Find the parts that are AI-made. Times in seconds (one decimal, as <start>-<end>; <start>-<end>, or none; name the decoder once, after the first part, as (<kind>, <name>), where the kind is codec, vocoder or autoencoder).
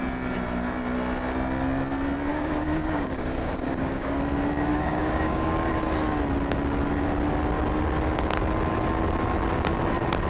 2.3-4.2 (codec, DAC); 4.7-5.7